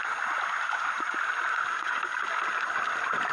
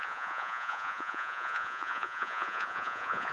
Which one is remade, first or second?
second